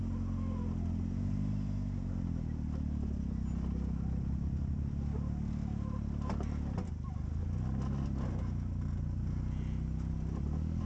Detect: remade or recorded recorded